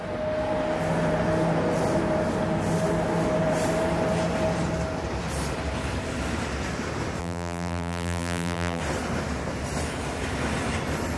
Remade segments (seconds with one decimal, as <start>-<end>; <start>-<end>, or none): 7.2-8.8